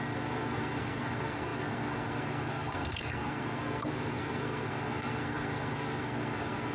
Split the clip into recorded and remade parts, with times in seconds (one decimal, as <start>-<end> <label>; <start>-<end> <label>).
0.0-6.7 remade